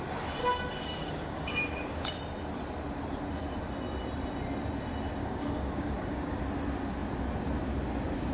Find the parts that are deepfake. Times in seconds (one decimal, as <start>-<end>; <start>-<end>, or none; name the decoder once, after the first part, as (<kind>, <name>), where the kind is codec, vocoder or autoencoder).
0.4-2.1 (codec, DAC); 5.2-6.4